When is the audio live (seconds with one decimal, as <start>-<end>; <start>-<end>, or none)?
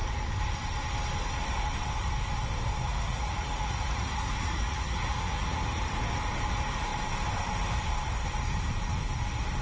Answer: 0.0-2.8; 5.8-9.6